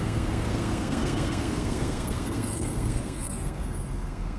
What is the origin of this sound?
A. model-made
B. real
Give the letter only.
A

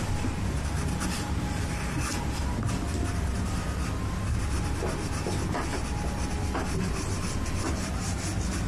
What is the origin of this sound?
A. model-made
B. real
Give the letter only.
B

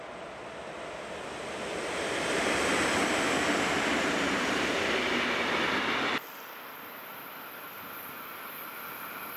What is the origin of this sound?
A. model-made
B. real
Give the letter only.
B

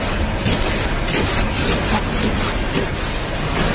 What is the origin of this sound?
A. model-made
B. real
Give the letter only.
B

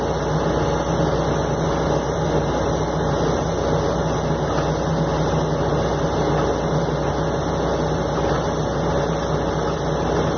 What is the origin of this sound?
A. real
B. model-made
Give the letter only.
A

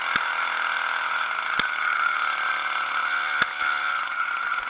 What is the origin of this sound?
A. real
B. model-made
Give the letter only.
A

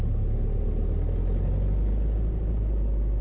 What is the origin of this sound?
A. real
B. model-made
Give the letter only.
A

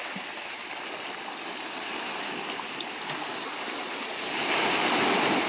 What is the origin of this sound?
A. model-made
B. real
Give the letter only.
B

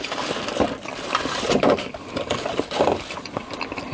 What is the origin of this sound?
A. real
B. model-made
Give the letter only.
B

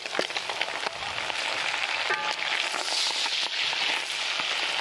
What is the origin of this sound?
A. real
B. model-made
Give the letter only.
A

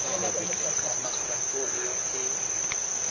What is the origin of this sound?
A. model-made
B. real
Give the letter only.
B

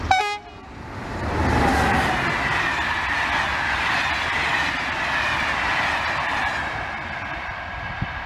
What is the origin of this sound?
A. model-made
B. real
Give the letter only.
B